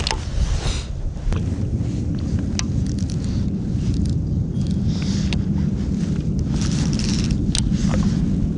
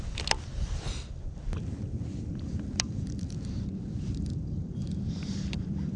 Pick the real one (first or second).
first